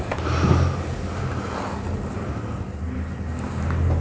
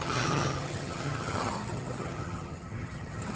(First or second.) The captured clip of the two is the first